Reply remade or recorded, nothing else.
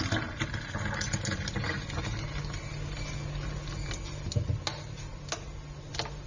recorded